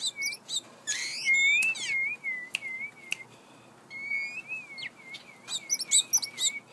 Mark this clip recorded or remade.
recorded